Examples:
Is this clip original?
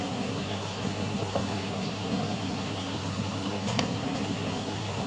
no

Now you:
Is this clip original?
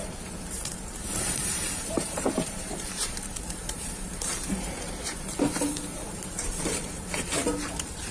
no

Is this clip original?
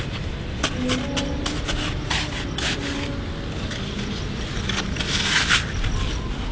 yes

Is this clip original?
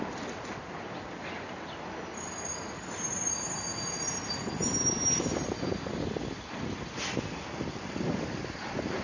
yes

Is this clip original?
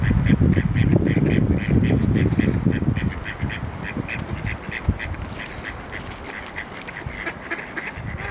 yes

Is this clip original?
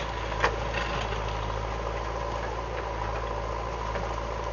yes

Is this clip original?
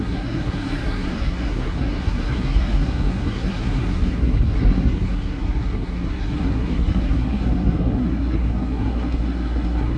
no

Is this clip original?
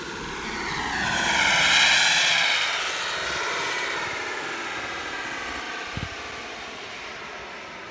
yes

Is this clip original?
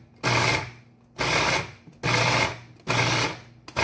yes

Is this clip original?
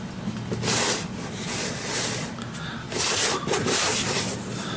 yes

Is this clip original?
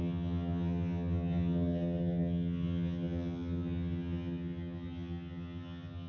no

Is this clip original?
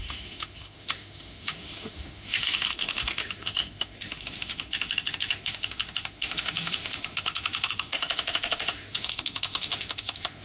no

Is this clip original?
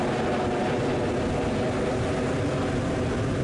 yes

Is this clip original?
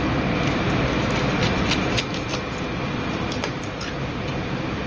yes